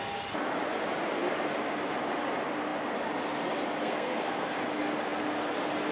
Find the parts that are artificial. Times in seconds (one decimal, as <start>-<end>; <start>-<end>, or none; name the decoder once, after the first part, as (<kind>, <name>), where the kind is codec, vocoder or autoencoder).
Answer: 3.8-4.6 (codec, SNAC)